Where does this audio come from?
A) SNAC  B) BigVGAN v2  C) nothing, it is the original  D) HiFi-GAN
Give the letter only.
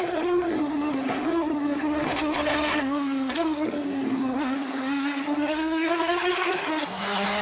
A